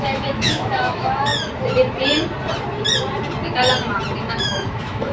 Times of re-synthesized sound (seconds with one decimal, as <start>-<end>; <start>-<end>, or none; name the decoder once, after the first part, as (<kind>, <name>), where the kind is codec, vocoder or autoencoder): 0.0-1.3 (autoencoder, DAC-VAE); 4.2-5.1

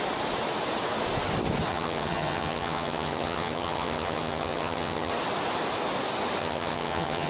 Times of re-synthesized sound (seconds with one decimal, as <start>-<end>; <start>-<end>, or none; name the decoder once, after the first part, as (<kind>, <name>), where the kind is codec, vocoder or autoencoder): 1.7-5.1 (vocoder, HiFi-GAN); 6.4-7.3

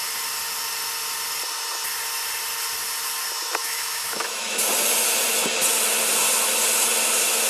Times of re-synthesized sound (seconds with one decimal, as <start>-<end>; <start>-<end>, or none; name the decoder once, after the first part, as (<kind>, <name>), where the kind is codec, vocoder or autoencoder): 3.6-4.6 (autoencoder, DAC-VAE)

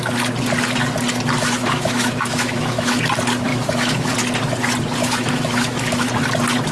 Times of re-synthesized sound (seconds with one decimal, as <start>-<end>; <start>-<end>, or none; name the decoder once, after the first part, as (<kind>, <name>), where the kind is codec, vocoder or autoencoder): 1.4-3.0 (autoencoder, DAC-VAE); 3.5-4.1; 5.0-6.1

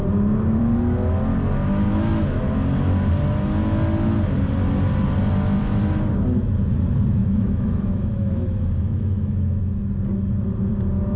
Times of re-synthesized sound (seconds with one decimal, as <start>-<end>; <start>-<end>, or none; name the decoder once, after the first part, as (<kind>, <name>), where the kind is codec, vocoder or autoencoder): 7.2-9.6 (autoencoder, DAC-VAE)

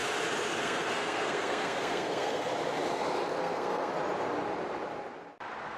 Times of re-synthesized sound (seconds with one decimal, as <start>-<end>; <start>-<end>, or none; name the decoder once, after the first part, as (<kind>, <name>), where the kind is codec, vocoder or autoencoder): 0.6-2.5 (codec, SNAC); 3.4-3.9

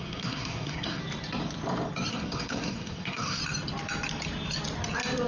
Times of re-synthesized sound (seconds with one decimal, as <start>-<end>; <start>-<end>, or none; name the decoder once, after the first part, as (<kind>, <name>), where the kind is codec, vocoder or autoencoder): 0.0-1.0 (codec, SNAC); 2.1-3.4